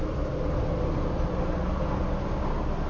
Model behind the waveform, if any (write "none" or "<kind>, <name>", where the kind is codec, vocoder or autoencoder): none